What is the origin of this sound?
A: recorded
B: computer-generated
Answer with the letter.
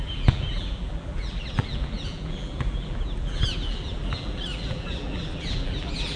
B